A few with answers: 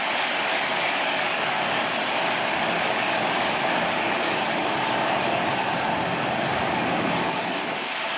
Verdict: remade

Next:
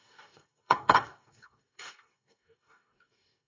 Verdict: remade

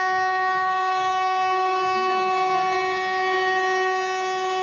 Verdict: remade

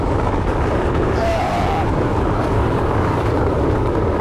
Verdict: remade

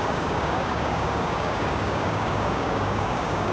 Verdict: remade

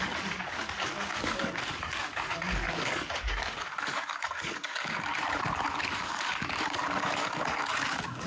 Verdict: remade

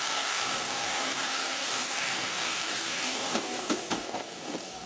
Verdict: remade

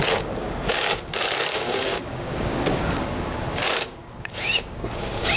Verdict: remade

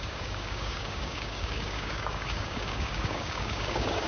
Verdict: remade